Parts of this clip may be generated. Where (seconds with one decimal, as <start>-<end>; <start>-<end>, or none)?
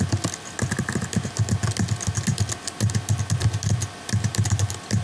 none